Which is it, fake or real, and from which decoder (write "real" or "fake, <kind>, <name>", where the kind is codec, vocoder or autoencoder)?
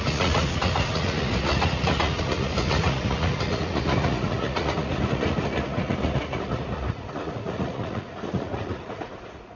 fake, vocoder, Vocos